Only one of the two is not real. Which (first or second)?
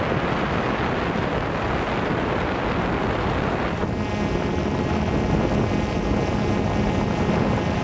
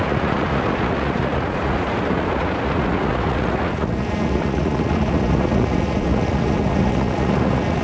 second